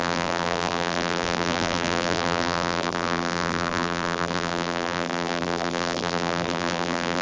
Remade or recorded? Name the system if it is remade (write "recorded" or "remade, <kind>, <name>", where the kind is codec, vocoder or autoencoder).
remade, vocoder, BigVGAN v2